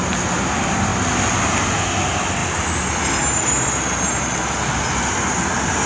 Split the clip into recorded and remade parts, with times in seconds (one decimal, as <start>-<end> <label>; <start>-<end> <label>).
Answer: 0.0-5.9 recorded